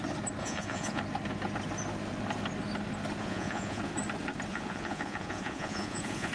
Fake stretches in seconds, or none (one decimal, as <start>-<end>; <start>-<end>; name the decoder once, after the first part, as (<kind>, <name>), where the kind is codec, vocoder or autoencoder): 0.4-1.0 (vocoder, Vocos); 3.2-3.8; 4.5-6.3